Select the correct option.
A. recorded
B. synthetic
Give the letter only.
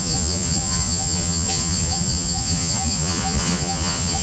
B